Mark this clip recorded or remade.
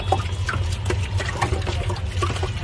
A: recorded